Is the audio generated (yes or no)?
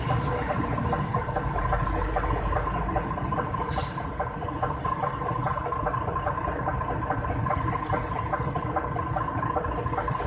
no